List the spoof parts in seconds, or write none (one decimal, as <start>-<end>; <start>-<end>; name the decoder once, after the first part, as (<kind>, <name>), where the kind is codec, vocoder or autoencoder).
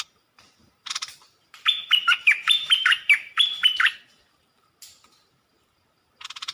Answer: 0.0-6.5 (vocoder, BigVGAN v2)